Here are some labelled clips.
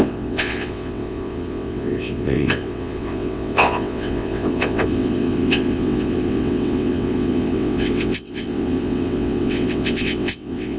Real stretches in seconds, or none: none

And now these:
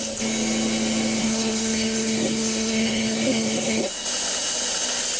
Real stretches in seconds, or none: 0.0-1.2; 3.9-5.2

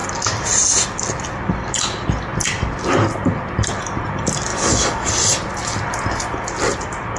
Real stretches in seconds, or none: 0.0-4.5; 5.1-7.2

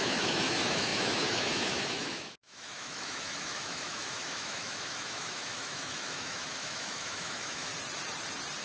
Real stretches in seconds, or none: 7.7-8.6

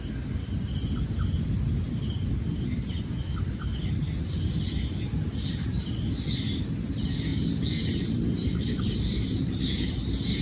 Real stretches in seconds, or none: 0.0-7.3; 9.9-10.4